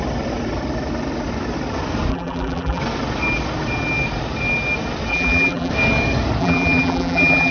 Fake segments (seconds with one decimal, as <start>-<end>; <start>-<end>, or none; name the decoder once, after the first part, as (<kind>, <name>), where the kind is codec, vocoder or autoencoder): 2.1-2.8 (vocoder, BigVGAN v2); 5.1-5.7; 6.4-7.5